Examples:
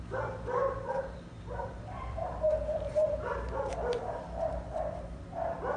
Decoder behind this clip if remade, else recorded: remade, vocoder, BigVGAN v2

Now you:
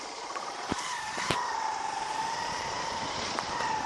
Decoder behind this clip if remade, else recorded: remade, vocoder, BigVGAN v2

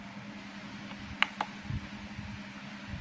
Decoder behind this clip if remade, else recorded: recorded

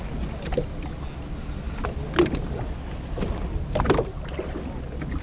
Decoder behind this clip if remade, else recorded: recorded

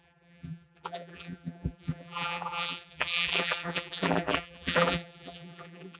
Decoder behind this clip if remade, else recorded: remade, vocoder, BigVGAN v2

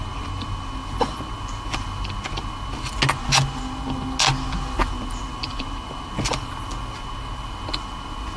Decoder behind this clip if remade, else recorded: recorded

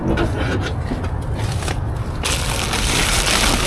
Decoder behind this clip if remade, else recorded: recorded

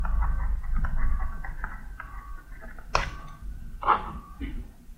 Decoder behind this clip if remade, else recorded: recorded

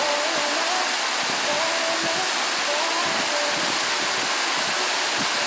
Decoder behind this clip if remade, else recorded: recorded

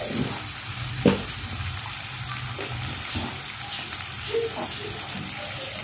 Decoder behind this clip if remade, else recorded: remade, vocoder, BigVGAN v2